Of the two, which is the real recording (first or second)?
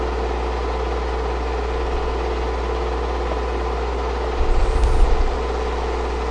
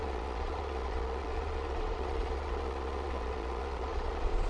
first